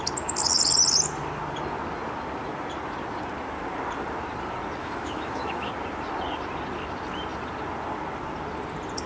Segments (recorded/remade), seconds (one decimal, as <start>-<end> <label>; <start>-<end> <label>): 0.0-4.8 recorded; 4.8-5.7 remade; 5.7-9.1 recorded

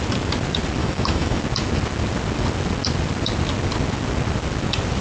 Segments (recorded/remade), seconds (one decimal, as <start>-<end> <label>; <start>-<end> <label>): 0.0-0.8 recorded; 0.8-1.4 remade; 1.4-5.0 recorded

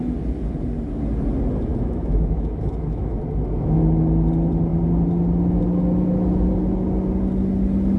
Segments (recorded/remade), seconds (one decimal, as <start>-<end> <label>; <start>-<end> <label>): 0.0-1.7 recorded; 1.7-3.2 remade; 3.2-8.0 recorded

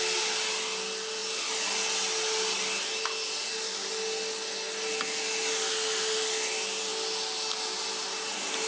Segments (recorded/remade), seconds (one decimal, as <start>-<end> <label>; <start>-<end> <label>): 0.0-8.7 recorded

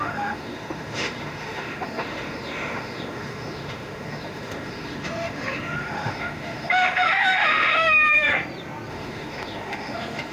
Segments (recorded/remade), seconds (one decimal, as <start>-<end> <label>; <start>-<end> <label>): 0.0-8.3 remade; 8.3-8.9 recorded; 8.9-10.3 remade

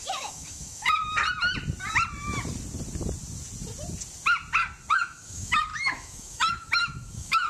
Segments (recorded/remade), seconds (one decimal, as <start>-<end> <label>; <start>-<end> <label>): 0.0-1.0 remade; 1.0-4.9 recorded; 4.9-7.5 remade

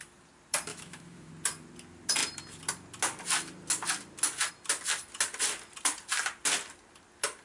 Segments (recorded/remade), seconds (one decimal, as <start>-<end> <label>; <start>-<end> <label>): 0.0-0.7 recorded; 0.7-1.3 remade; 1.3-7.4 recorded

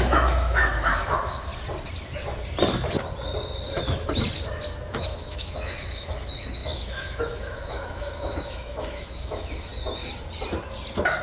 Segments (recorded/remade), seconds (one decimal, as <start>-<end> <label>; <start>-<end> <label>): 0.0-1.5 remade; 1.5-4.9 recorded; 4.9-9.7 remade; 9.7-11.2 recorded